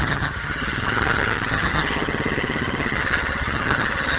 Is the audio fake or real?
fake